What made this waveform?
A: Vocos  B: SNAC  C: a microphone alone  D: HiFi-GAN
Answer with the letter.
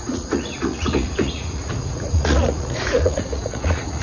A